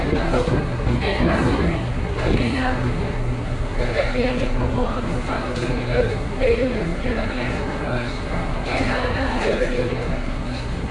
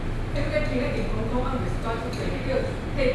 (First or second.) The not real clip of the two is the first